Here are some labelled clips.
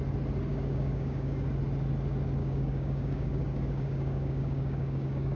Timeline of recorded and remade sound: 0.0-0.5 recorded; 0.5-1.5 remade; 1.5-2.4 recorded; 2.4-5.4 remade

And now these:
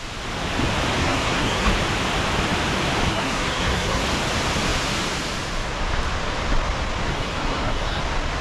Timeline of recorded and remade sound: 0.0-1.0 recorded; 1.0-1.7 remade; 1.7-3.1 recorded; 3.1-4.0 remade; 4.0-7.1 recorded; 7.1-8.0 remade; 8.0-8.4 recorded

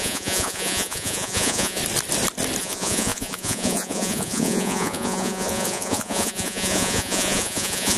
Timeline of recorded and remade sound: 0.0-1.8 remade; 1.8-2.6 recorded; 2.6-8.0 remade

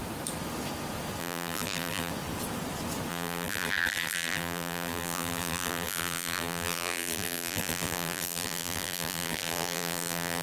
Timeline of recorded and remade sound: 0.0-1.2 recorded; 1.2-2.1 remade; 2.1-3.1 recorded; 3.1-10.4 remade

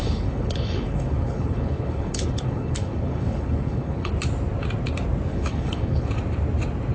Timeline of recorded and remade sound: 0.0-4.1 remade; 4.1-5.3 recorded; 5.3-6.1 remade; 6.1-6.9 recorded

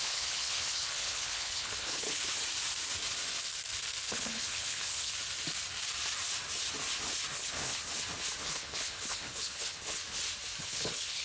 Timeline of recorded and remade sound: 0.0-2.4 remade; 2.4-4.1 recorded; 4.1-5.1 remade; 5.1-7.3 recorded; 7.3-7.8 remade; 7.8-8.4 recorded; 8.4-10.0 remade; 10.0-10.6 recorded; 10.6-11.2 remade